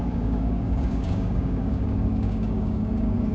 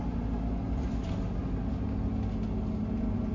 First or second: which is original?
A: second